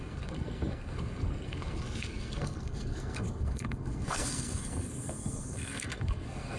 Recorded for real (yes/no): no